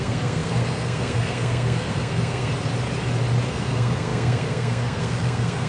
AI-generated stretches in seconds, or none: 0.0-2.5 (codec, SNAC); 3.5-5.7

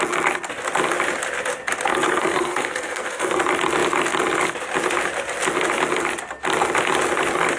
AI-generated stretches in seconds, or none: 1.9-3.4 (codec, SNAC)